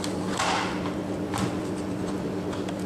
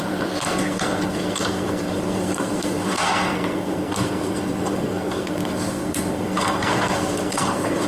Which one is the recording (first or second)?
first